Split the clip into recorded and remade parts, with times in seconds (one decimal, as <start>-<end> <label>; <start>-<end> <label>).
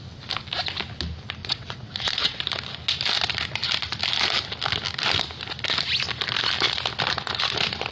0.0-1.4 recorded; 1.4-2.4 remade; 2.4-7.9 recorded